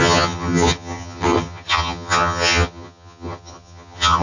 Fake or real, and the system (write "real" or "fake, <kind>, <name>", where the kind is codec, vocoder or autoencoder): fake, vocoder, HiFi-GAN